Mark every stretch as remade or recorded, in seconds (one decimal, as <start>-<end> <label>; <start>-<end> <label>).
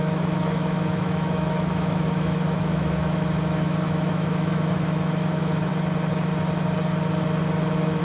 0.0-5.7 remade; 5.7-8.0 recorded